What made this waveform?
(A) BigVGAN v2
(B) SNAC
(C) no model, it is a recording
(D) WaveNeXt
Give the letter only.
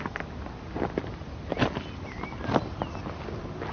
C